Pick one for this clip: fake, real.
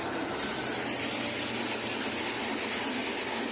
real